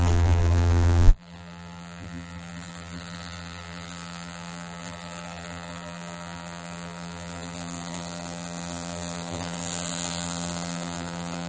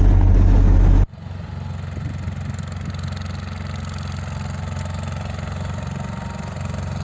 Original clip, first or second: second